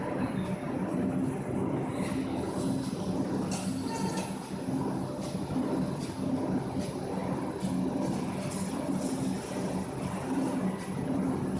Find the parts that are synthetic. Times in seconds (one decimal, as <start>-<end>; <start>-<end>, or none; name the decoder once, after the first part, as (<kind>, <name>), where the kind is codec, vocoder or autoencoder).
none